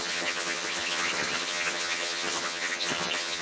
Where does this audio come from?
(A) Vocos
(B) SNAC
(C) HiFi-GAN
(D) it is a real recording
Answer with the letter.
C